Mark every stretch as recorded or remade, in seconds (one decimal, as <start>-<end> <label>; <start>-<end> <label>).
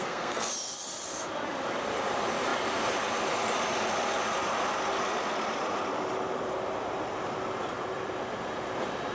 0.0-0.5 remade; 0.5-9.1 recorded